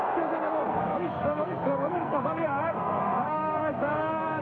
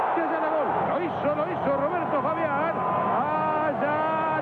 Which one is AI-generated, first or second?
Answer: first